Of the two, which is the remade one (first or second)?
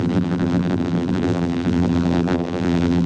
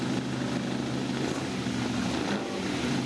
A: first